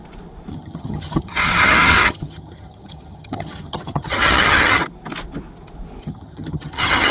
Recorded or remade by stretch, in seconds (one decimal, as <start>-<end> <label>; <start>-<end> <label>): 0.0-0.5 recorded; 0.5-4.8 remade; 4.8-6.0 recorded; 6.0-7.1 remade